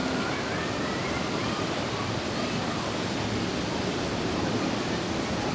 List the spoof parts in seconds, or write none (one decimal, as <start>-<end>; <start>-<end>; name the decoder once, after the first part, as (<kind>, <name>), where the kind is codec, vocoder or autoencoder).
0.0-2.8 (vocoder, BigVGAN v2)